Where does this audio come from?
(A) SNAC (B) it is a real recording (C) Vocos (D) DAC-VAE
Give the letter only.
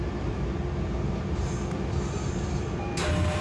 B